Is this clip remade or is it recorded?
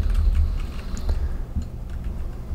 recorded